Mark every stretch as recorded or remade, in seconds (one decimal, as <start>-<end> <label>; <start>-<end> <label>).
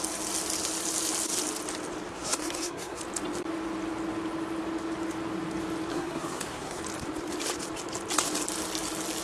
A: 0.0-2.1 recorded; 2.1-3.0 remade; 3.0-5.9 recorded; 5.9-6.8 remade; 6.8-9.2 recorded